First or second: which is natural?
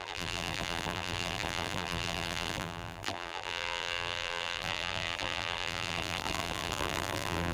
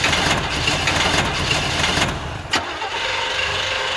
second